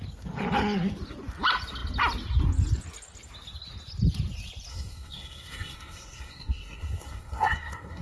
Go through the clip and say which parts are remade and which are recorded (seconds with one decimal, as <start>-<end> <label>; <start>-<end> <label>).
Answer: 0.0-4.7 recorded; 4.7-8.0 remade